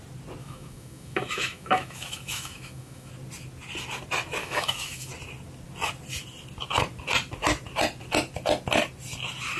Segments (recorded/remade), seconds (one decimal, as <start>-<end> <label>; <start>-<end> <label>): 0.0-0.4 recorded; 0.4-3.1 remade; 3.1-4.4 recorded; 4.4-5.1 remade; 5.1-9.6 recorded